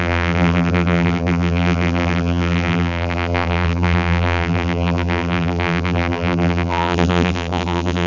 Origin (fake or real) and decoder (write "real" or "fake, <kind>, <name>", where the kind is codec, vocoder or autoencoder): fake, vocoder, BigVGAN v2